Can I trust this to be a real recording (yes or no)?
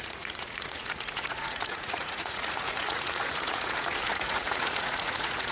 no